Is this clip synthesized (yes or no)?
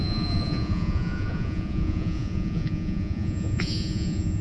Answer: yes